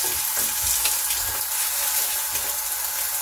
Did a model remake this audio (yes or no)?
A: no